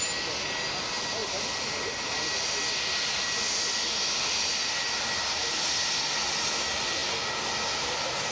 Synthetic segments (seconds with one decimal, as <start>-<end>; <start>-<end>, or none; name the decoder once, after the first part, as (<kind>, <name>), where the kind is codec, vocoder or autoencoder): none